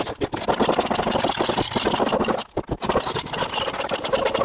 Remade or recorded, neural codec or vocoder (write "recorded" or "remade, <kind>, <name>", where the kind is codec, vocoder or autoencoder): recorded